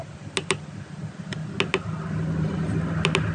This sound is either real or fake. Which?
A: real